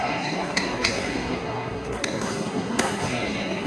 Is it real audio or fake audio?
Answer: fake